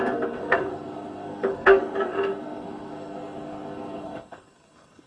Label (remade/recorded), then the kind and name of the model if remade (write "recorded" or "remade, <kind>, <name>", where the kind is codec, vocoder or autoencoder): remade, codec, SNAC